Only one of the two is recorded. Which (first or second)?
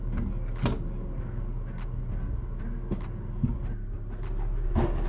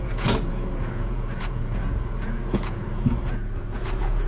first